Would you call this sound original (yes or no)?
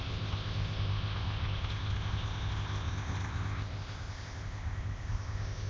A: no